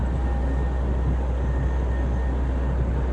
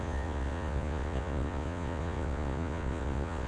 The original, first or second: first